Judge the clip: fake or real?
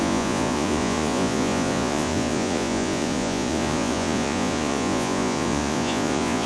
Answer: fake